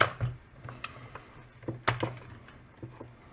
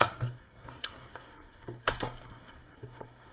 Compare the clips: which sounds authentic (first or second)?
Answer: first